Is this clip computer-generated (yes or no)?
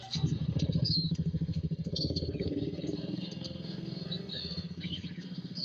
yes